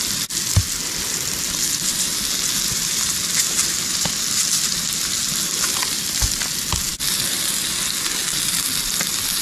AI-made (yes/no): no